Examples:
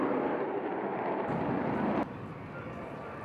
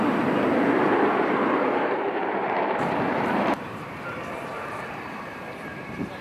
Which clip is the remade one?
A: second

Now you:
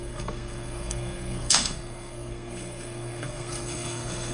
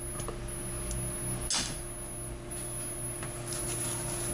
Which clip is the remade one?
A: first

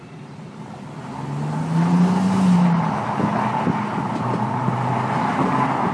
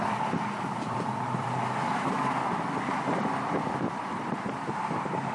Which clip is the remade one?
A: second